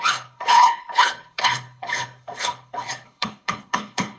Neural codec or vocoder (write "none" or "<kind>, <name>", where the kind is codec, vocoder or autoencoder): codec, HILCodec